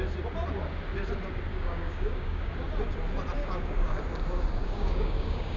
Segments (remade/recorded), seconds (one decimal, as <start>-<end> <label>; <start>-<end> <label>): 0.0-1.5 recorded; 1.5-2.5 remade; 2.5-3.4 recorded; 3.4-4.0 remade; 4.0-4.6 recorded; 4.6-5.6 remade